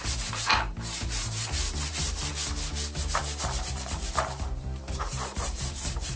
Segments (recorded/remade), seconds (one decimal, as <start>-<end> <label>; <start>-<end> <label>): 0.0-2.3 remade; 2.3-3.7 recorded; 3.7-6.2 remade